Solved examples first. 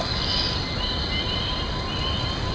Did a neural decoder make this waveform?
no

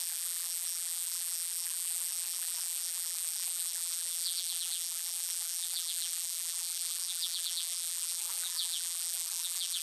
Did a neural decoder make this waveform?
yes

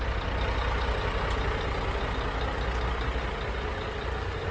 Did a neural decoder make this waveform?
no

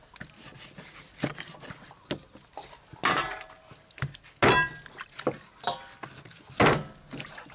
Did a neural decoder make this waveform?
no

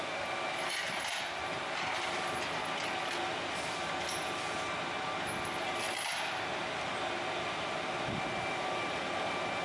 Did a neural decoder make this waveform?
no